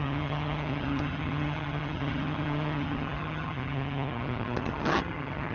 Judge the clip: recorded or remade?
remade